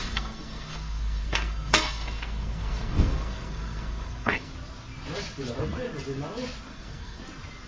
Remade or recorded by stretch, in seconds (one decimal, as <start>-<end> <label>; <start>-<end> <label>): 0.0-4.5 remade; 4.5-6.7 recorded; 6.7-7.2 remade; 7.2-7.7 recorded